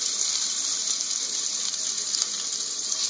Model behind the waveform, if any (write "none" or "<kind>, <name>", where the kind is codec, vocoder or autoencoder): vocoder, BigVGAN v2